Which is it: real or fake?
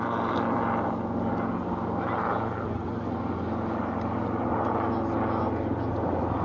real